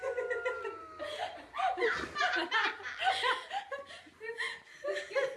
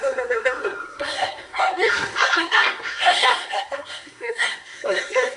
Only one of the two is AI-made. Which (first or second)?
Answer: second